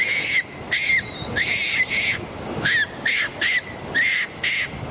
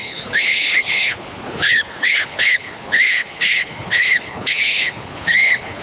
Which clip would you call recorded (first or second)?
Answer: first